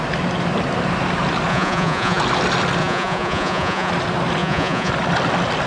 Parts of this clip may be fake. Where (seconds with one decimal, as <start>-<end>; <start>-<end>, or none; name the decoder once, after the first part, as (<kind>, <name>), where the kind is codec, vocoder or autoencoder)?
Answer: 1.5-2.2 (vocoder, Vocos); 2.8-3.9; 4.4-4.9